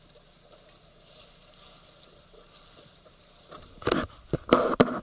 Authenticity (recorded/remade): recorded